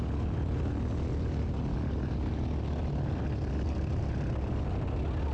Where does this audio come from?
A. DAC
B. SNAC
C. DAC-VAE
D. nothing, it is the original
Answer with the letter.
D